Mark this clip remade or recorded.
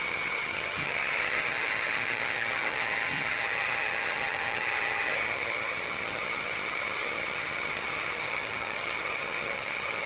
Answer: remade